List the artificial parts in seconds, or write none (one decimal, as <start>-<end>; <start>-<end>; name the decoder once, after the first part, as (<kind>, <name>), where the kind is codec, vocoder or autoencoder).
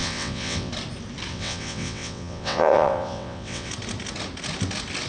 0.0-0.7 (vocoder, WaveNeXt); 1.3-3.7